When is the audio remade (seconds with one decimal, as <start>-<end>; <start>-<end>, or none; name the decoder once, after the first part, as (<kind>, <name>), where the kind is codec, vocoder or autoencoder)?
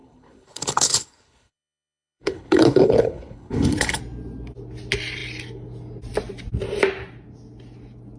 0.0-4.0 (codec, HILCodec)